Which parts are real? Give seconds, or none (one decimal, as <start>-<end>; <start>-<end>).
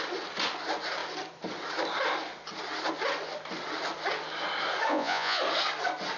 0.0-4.9; 5.4-6.2